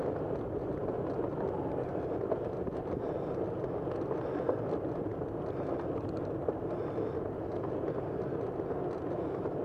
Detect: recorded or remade recorded